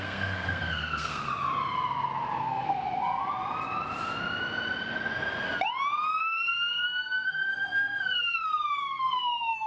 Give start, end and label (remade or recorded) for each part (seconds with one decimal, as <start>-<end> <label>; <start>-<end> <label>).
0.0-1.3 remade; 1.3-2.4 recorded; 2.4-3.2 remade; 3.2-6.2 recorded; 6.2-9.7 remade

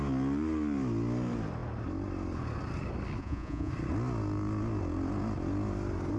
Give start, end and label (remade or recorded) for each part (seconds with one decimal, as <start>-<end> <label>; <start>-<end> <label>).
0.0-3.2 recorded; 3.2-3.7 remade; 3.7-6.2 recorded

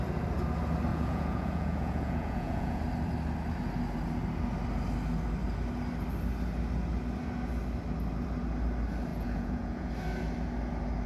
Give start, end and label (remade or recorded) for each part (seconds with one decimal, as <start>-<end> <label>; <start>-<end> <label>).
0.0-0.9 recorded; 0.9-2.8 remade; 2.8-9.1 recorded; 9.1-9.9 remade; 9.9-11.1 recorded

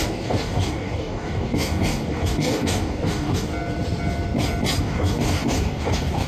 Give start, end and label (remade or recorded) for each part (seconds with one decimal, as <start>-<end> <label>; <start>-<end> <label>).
0.0-3.5 remade; 3.5-4.8 recorded; 4.8-6.3 remade